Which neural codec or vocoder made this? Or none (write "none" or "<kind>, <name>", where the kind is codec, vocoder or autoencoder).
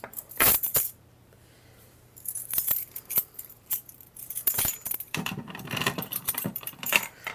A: vocoder, BigVGAN v2